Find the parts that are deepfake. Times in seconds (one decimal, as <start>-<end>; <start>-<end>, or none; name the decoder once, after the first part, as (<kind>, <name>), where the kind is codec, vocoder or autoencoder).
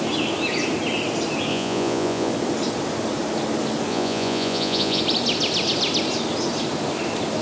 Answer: 1.5-2.3 (vocoder, Vocos); 3.9-5.0